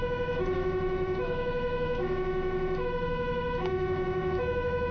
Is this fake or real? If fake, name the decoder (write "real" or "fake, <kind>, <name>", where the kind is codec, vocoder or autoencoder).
fake, autoencoder, DAC-VAE